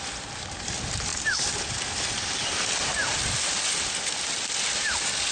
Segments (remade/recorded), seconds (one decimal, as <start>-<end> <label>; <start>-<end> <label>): 0.0-5.3 recorded